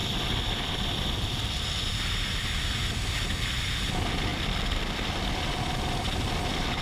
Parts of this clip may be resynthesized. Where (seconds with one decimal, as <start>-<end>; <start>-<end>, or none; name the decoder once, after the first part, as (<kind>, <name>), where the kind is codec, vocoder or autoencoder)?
none